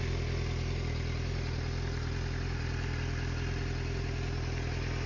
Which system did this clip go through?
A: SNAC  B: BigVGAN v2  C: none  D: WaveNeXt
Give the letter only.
C